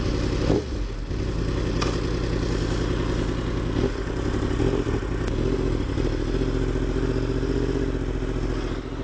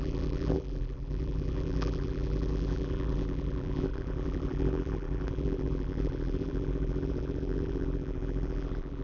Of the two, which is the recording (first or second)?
first